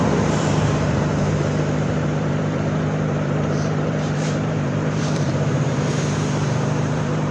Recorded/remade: remade